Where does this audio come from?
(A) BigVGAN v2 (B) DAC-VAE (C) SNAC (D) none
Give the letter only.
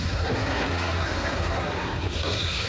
C